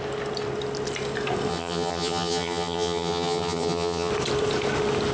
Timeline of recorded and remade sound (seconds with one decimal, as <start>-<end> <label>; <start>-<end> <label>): 0.0-1.5 recorded; 1.5-4.1 remade; 4.1-5.1 recorded